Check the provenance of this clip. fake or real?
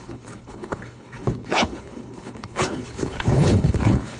fake